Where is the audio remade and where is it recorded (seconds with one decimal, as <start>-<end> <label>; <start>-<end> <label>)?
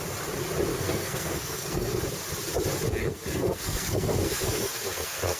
0.0-0.7 recorded; 0.7-2.0 remade; 2.0-3.0 recorded; 3.0-5.4 remade